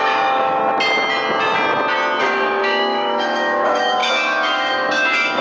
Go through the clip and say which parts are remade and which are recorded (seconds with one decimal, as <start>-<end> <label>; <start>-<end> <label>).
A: 0.0-0.6 remade; 0.6-2.2 recorded; 2.2-5.4 remade